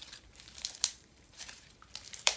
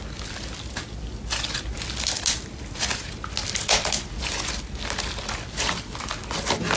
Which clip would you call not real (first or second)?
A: first